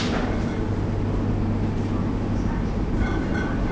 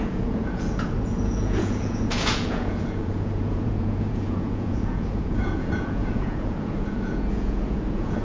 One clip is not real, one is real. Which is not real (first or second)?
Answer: second